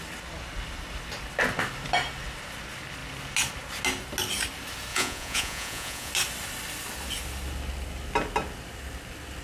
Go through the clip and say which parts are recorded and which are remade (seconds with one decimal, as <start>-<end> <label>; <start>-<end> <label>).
0.0-4.9 recorded; 4.9-6.1 remade; 6.1-9.4 recorded